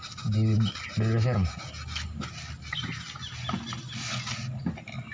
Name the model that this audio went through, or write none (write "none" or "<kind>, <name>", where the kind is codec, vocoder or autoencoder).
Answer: none